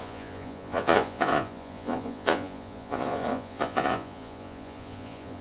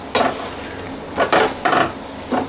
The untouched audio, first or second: second